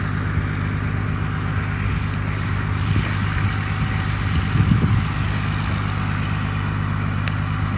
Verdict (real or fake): real